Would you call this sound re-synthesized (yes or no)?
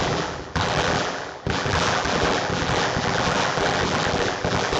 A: yes